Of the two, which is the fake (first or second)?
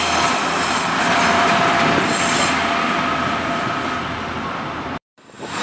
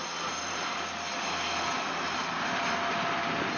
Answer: first